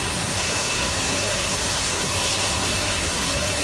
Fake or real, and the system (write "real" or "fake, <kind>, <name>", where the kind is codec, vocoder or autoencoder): fake, codec, SNAC